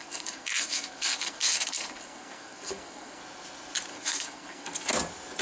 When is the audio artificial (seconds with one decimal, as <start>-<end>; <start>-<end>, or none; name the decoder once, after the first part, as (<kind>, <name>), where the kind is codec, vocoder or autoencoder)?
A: 0.0-3.2 (codec, SNAC); 3.9-4.9